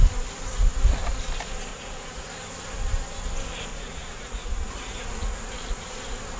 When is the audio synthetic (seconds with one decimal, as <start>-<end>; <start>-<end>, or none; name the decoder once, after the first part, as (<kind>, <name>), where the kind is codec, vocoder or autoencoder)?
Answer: 1.7-2.3 (vocoder, Vocos); 3.7-4.7